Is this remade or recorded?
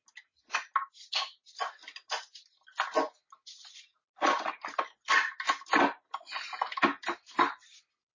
recorded